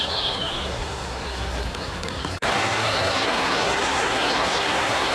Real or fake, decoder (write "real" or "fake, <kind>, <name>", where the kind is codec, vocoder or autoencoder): fake, codec, SNAC